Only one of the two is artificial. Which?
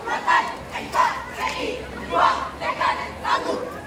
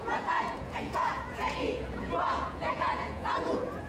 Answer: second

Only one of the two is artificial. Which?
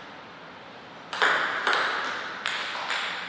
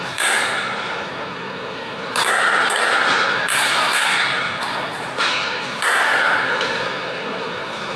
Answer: second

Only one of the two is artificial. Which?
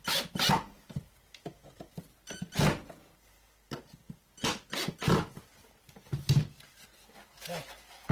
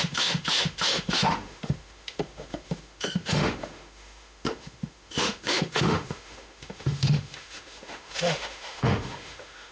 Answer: second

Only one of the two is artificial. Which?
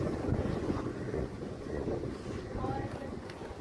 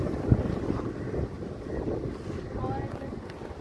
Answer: first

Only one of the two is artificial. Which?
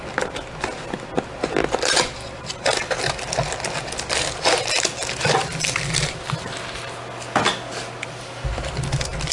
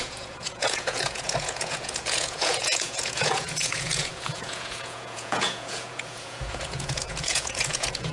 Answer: second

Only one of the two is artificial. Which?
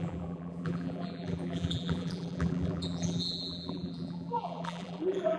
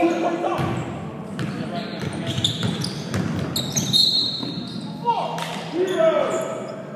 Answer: first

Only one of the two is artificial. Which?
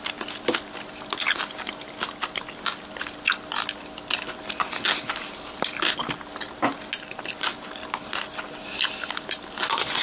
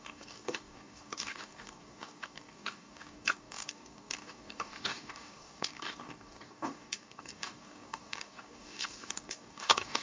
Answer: second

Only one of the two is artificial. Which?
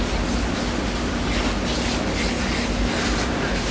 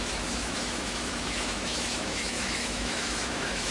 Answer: second